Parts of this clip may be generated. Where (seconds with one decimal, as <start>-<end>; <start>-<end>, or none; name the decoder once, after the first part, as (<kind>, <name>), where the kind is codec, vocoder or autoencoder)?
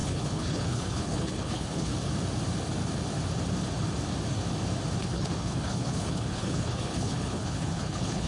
0.0-1.9 (codec, HILCodec); 5.0-8.3